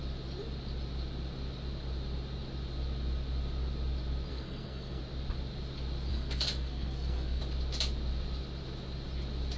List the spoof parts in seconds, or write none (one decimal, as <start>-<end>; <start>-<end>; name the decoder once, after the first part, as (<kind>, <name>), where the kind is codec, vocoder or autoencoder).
4.3-5.0 (codec, SNAC); 6.1-7.4